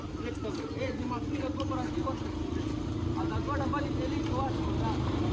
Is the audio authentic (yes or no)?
yes